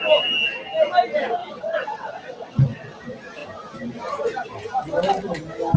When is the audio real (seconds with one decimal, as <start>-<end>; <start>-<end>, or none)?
0.0-1.4; 3.0-5.8